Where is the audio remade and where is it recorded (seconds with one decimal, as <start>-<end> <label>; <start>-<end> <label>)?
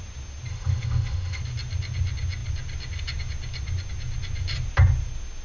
0.0-0.5 recorded; 0.5-1.4 remade; 1.4-5.4 recorded